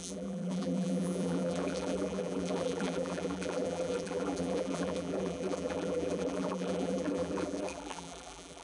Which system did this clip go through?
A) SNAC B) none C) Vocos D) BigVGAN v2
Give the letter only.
D